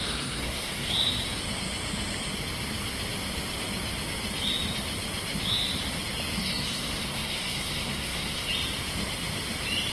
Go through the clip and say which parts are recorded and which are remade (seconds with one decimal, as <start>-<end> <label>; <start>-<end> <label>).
0.0-0.9 remade; 0.9-6.4 recorded; 6.4-8.5 remade; 8.5-9.9 recorded